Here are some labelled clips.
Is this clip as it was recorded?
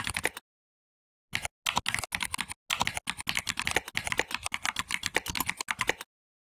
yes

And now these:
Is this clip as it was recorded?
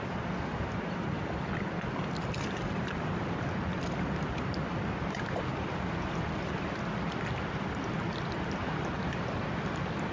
yes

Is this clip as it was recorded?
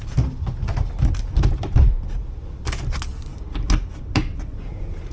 yes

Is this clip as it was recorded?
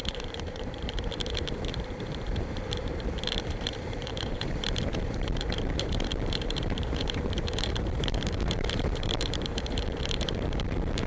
no